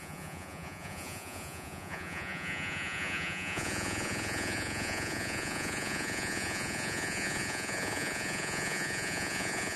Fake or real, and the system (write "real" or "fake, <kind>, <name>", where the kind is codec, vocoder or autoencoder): fake, vocoder, Vocos